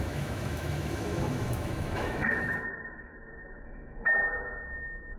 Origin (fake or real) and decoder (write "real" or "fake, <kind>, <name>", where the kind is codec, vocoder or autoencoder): fake, autoencoder, DAC-VAE